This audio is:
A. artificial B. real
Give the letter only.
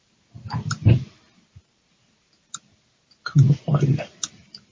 B